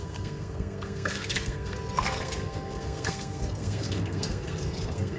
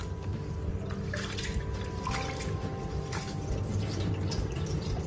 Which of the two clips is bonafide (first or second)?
second